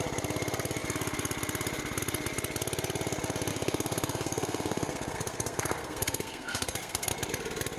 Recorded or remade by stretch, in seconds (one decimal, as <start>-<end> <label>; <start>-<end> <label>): 0.0-3.5 recorded; 3.5-7.1 remade; 7.1-7.8 recorded